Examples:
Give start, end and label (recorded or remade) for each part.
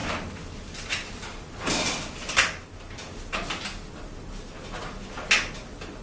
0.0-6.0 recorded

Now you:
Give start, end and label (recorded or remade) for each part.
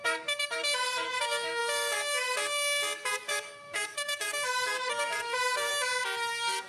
0.0-5.7 remade; 5.7-6.3 recorded; 6.3-6.7 remade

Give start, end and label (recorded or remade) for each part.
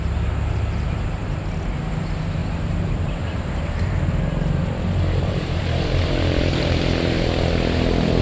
0.0-2.4 recorded; 2.4-7.3 remade; 7.3-8.2 recorded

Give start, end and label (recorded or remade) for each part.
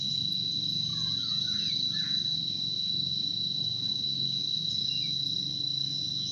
0.0-0.9 recorded; 0.9-1.7 remade; 1.7-6.3 recorded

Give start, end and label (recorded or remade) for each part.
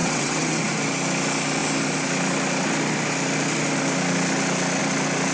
0.0-0.6 remade; 0.6-5.3 recorded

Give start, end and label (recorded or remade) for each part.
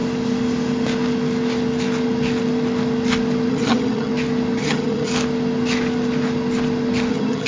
0.0-3.5 recorded; 3.5-4.1 remade; 4.1-4.6 recorded; 4.6-5.1 remade; 5.1-7.1 recorded; 7.1-7.5 remade